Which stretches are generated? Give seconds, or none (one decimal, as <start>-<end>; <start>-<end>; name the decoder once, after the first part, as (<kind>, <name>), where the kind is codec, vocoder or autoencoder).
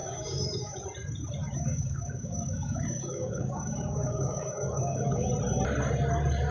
0.0-0.8 (codec, DAC); 1.4-5.3